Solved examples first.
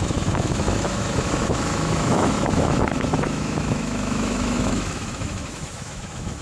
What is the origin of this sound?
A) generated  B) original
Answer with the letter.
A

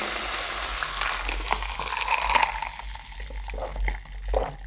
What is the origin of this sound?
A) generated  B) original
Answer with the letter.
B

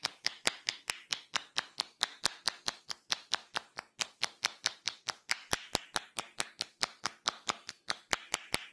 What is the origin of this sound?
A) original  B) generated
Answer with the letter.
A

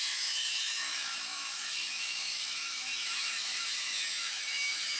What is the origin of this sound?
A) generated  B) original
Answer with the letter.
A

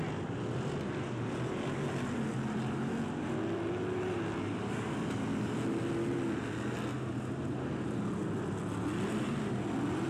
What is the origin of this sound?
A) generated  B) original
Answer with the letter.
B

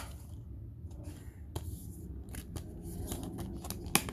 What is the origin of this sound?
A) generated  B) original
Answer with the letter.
B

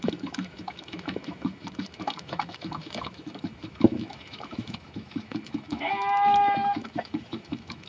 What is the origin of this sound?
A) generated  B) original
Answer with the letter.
A